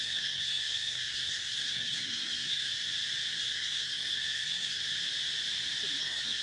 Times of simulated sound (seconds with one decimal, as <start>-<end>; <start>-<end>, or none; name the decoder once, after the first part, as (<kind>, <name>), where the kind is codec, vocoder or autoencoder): 0.0-2.7 (codec, SNAC); 3.3-4.8; 6.0-6.4